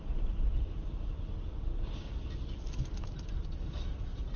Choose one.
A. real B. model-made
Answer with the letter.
A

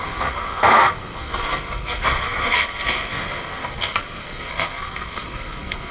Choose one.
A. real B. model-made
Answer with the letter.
B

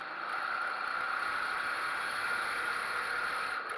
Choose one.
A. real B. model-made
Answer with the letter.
A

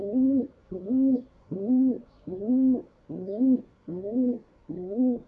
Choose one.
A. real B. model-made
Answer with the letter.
B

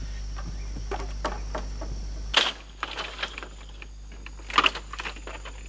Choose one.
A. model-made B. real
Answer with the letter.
B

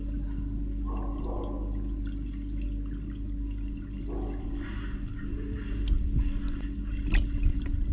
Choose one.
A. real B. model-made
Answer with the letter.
A